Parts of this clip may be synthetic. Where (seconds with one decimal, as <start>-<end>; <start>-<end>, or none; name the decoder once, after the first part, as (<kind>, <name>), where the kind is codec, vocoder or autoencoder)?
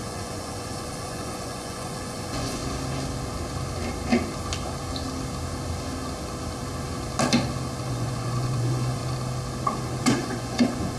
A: 0.0-2.6 (vocoder, Vocos); 7.9-9.0; 10.0-11.0